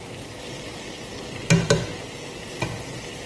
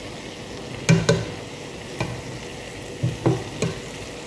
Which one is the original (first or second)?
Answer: second